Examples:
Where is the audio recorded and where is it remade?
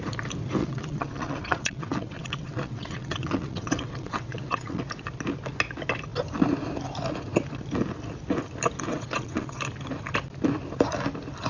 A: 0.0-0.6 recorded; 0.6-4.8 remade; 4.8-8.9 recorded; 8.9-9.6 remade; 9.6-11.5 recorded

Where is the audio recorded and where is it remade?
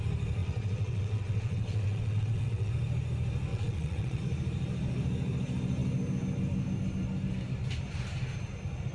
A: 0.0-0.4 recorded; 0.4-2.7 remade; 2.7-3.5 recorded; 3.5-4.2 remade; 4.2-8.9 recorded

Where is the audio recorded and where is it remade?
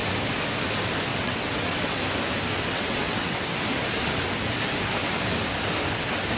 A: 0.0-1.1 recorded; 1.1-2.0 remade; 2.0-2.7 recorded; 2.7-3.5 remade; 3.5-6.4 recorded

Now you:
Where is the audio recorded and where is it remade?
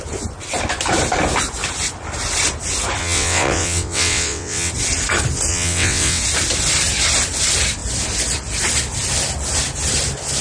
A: 0.0-3.0 recorded; 3.0-4.7 remade; 4.7-5.5 recorded; 5.5-6.2 remade; 6.2-10.4 recorded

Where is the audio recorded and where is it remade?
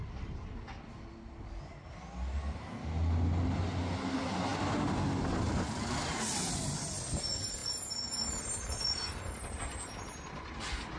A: 0.0-11.0 recorded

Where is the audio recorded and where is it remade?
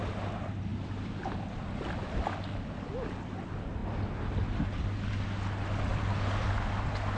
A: 0.0-7.2 recorded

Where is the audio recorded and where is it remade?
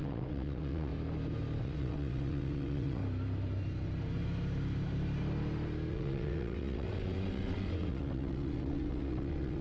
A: 0.0-0.9 remade; 0.9-1.6 recorded; 1.6-3.0 remade; 3.0-5.9 recorded; 5.9-9.6 remade